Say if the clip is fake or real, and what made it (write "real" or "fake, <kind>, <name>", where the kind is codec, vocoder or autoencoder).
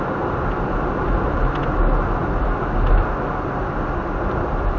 real